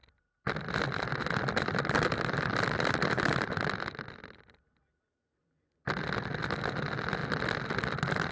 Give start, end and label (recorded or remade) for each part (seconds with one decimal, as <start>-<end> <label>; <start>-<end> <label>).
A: 0.0-8.3 recorded